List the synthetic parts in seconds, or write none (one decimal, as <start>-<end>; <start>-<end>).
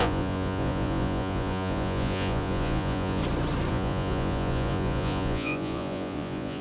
0.0-3.2; 3.7-6.6